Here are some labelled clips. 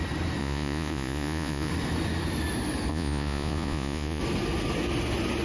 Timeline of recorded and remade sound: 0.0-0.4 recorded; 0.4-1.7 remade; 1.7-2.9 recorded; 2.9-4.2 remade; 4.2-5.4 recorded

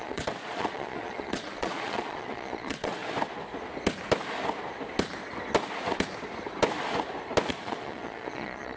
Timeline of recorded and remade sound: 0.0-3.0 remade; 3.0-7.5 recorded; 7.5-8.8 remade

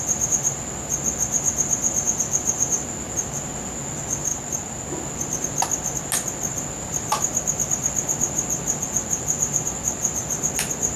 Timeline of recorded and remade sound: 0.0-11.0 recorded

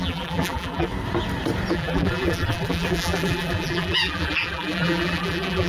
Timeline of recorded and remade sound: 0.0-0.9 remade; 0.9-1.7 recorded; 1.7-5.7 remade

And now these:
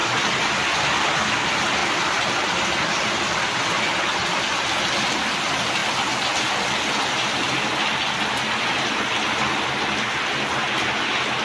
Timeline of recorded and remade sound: 0.0-0.6 remade; 0.6-1.8 recorded; 1.8-3.8 remade; 3.8-11.4 recorded

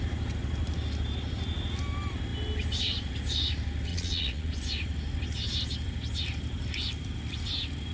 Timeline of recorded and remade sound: 0.0-3.9 recorded; 3.9-4.5 remade; 4.5-7.9 recorded

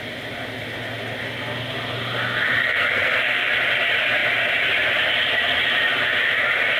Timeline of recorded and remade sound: 0.0-2.6 recorded; 2.6-3.5 remade; 3.5-6.8 recorded